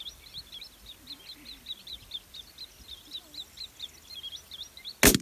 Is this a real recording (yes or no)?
yes